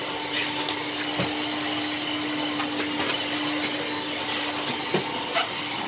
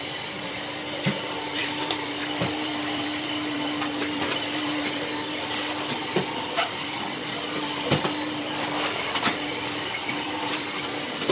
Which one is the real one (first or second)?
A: first